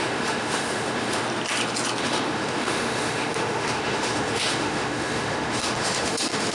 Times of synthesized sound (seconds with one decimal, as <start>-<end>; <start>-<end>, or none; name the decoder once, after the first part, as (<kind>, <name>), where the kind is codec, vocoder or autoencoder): 0.0-1.2 (autoencoder, DAC-VAE); 2.0-6.5

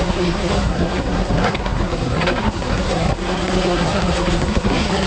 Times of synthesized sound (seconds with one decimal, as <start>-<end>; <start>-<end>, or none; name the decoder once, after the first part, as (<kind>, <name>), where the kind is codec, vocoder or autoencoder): 0.0-5.1 (codec, SNAC)

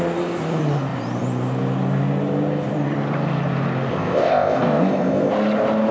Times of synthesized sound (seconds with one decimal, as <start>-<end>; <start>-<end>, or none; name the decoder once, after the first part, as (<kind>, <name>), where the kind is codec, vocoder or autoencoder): 3.9-5.3 (codec, ZipCodec)